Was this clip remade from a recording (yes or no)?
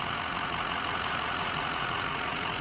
yes